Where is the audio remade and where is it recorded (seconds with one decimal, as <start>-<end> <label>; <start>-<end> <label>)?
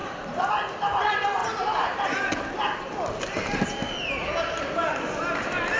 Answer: 0.0-0.5 remade; 0.5-5.8 recorded